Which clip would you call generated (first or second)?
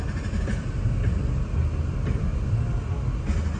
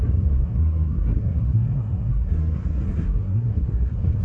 second